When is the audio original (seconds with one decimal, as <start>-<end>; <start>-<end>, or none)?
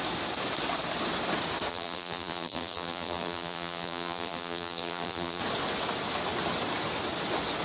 0.0-1.7; 5.4-7.6